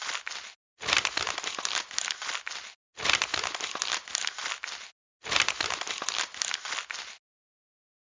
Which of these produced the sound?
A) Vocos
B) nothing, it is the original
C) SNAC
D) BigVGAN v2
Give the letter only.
B